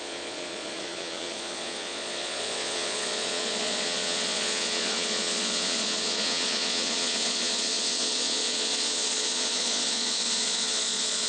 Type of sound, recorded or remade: remade